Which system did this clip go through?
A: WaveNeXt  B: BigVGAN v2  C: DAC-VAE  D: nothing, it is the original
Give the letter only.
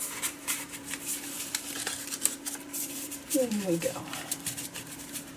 B